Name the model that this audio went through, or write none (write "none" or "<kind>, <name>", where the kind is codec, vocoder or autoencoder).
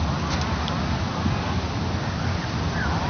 none